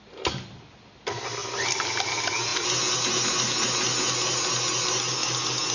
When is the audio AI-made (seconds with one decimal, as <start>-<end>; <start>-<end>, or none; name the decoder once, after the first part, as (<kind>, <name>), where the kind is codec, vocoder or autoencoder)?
none